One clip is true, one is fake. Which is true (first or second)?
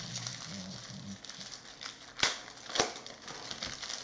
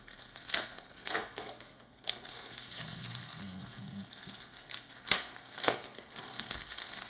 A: first